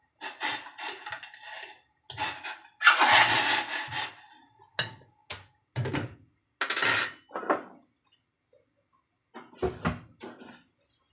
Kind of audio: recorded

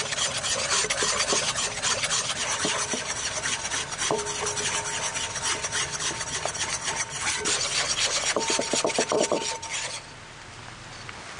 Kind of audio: recorded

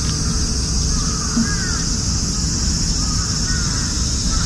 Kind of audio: recorded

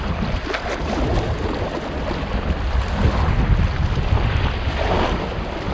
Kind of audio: recorded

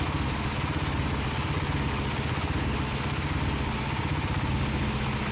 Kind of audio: recorded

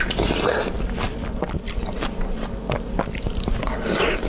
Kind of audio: recorded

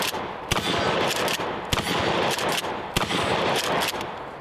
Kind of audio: recorded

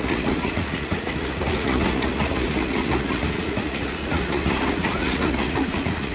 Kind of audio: remade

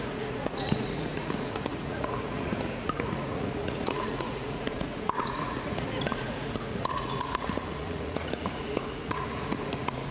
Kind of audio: remade